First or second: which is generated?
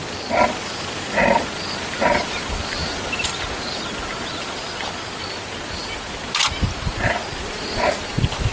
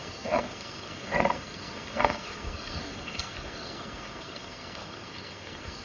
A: second